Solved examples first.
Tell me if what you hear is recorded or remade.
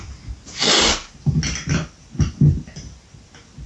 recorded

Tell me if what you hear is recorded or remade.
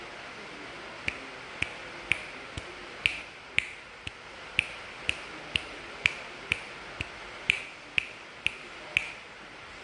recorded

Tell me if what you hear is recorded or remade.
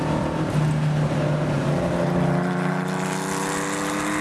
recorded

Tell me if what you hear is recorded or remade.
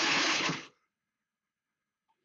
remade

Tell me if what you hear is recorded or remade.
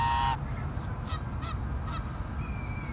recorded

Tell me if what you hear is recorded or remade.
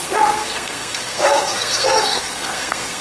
remade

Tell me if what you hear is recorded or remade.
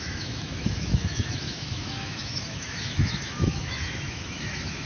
remade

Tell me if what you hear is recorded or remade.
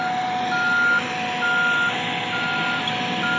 recorded